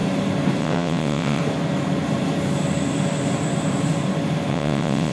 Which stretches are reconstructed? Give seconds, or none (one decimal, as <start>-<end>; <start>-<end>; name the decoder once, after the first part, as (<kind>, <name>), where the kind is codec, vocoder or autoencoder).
0.6-1.4 (vocoder, WaveNeXt); 4.5-5.1